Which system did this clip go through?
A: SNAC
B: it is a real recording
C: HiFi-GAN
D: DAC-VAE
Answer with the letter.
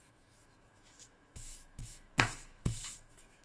D